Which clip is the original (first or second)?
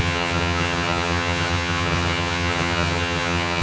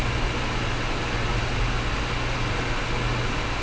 second